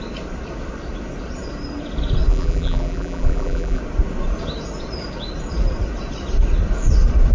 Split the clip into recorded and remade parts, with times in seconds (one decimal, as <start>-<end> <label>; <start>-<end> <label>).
0.0-2.3 recorded; 2.3-3.8 remade; 3.8-7.3 recorded